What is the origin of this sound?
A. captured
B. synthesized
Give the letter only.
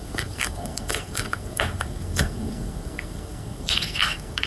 B